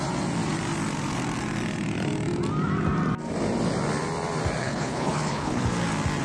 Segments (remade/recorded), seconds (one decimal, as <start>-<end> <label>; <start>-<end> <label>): 0.0-4.6 recorded; 4.6-5.6 remade; 5.6-6.2 recorded